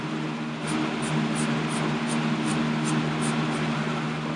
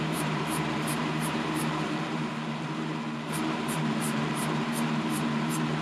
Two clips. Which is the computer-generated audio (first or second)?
second